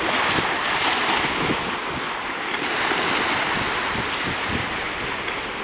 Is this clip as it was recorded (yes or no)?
yes